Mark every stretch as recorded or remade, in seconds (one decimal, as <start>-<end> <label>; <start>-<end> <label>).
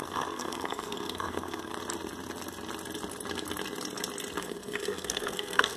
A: 0.0-1.7 remade; 1.7-4.4 recorded; 4.4-5.8 remade